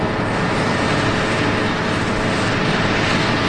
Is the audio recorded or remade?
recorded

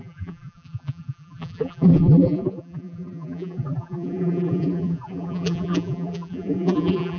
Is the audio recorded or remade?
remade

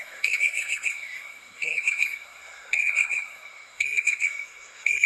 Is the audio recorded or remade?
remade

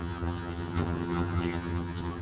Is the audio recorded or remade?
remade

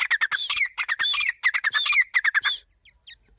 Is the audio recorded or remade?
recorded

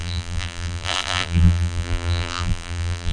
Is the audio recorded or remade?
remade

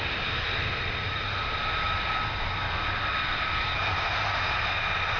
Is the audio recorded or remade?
recorded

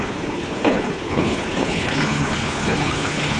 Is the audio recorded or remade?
remade